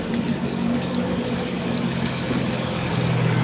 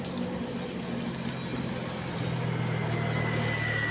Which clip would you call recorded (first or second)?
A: second